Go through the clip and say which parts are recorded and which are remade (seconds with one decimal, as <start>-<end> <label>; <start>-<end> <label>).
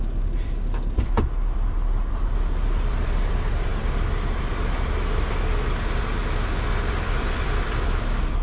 0.0-6.2 remade; 6.2-6.9 recorded; 6.9-8.4 remade